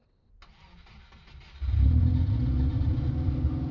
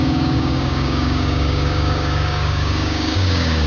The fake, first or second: second